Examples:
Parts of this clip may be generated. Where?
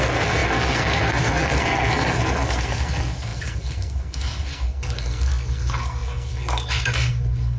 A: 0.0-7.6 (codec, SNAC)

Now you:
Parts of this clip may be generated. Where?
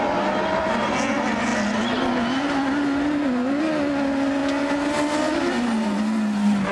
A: none